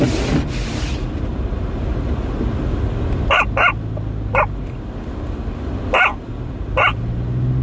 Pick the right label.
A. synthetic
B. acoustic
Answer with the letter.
B